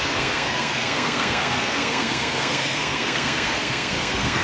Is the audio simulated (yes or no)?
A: yes